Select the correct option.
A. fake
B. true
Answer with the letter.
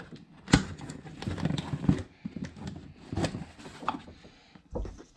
B